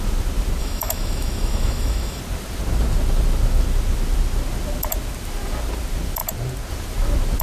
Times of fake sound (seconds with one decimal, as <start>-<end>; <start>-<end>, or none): 0.6-2.2